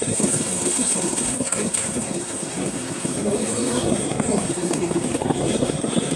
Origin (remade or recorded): remade